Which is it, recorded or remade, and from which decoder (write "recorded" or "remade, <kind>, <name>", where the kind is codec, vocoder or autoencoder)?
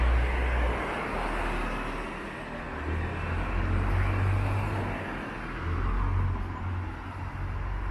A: recorded